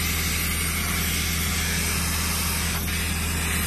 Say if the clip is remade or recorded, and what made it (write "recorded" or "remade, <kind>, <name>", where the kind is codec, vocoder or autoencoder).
recorded